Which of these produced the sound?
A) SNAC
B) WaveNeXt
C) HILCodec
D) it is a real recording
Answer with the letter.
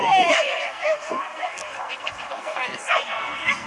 A